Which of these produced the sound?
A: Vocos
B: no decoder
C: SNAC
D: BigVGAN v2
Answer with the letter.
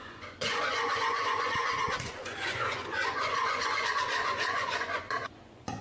A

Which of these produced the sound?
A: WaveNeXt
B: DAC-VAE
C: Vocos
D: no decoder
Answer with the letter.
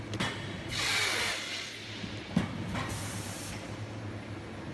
D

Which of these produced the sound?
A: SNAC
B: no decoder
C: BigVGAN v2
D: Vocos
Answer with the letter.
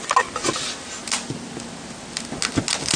B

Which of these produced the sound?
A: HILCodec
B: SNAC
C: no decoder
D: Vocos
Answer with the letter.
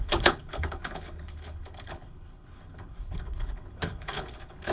A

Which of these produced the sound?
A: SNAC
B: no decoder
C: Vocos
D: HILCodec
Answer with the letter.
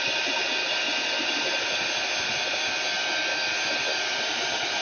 B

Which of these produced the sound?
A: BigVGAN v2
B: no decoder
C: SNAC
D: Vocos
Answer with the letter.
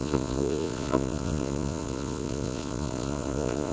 D